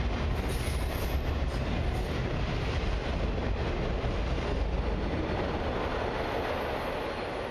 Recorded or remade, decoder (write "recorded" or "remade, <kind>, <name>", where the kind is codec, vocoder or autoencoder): recorded